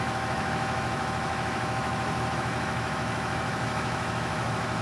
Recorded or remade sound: remade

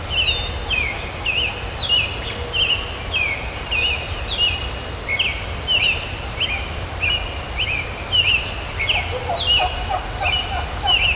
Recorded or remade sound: recorded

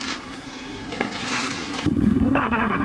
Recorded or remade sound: remade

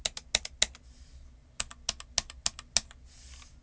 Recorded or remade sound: recorded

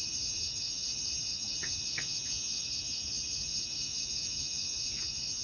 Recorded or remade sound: remade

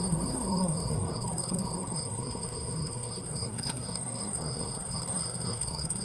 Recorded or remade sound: remade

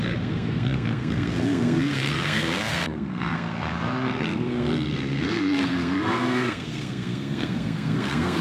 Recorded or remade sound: remade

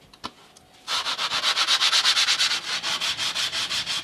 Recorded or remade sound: recorded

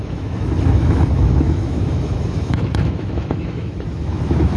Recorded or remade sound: remade